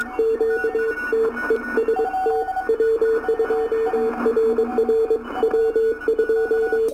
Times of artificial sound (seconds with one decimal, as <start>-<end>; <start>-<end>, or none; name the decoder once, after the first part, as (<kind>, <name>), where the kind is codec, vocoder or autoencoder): none